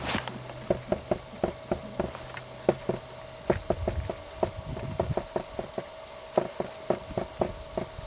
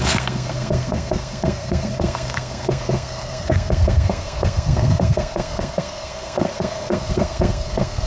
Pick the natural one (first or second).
first